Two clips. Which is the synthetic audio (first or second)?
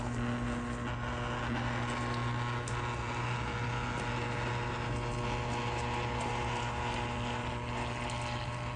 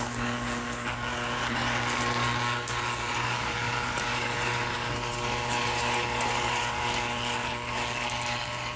second